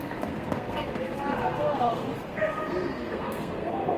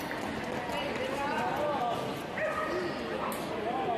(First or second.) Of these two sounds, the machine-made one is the first